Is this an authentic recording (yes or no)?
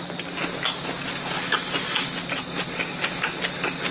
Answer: yes